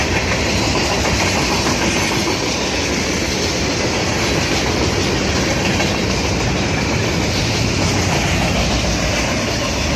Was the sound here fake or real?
real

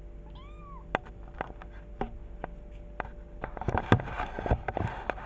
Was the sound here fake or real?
real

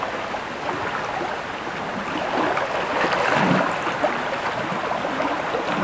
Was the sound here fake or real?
real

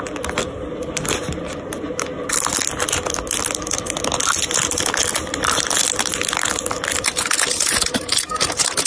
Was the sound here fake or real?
real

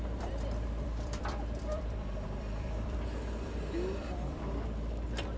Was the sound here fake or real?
fake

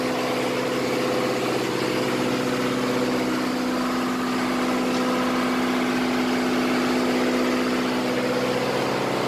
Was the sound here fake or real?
real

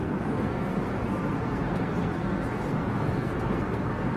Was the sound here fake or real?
fake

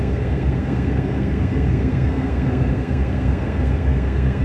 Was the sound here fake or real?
fake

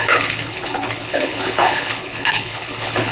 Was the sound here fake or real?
fake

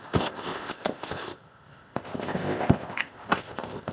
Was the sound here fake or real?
fake